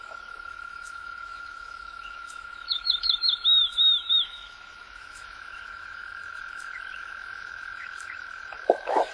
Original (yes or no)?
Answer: no